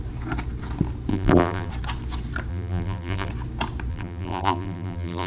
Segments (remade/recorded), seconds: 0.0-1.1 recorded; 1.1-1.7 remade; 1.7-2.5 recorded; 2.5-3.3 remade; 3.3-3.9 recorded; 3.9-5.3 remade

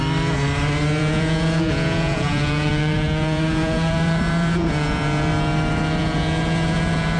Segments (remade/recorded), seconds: 0.0-1.0 recorded; 1.0-5.3 remade; 5.3-6.0 recorded; 6.0-7.2 remade

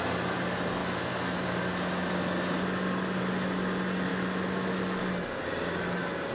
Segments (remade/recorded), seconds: 0.0-0.8 recorded; 0.8-1.6 remade; 1.6-4.1 recorded; 4.1-5.0 remade; 5.0-6.3 recorded

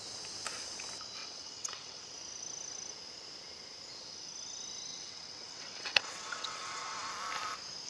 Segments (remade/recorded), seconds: 0.0-1.2 recorded; 1.2-2.0 remade; 2.0-4.9 recorded; 4.9-7.1 remade; 7.1-7.9 recorded

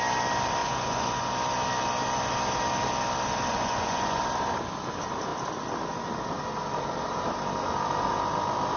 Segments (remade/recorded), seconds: 0.0-0.6 recorded; 0.6-1.3 remade; 1.3-3.5 recorded; 3.5-4.2 remade; 4.2-8.8 recorded

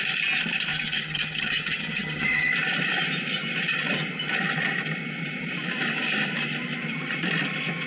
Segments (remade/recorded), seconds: 0.0-0.7 recorded; 0.7-2.5 remade; 2.5-7.9 recorded

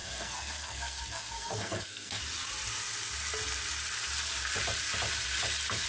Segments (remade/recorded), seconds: 0.0-2.2 remade; 2.2-5.9 recorded

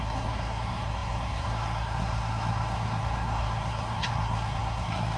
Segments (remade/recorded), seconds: 0.0-5.2 remade